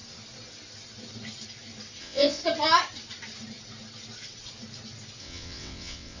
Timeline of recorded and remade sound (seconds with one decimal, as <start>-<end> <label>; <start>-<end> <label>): 0.0-2.0 recorded; 2.0-2.4 remade; 2.4-5.2 recorded; 5.2-6.2 remade